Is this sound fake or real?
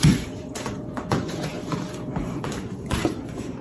fake